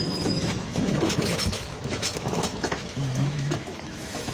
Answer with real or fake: fake